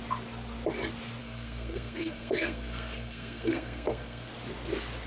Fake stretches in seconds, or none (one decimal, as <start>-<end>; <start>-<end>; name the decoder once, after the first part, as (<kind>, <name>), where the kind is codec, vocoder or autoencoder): 1.2-4.3 (codec, SNAC)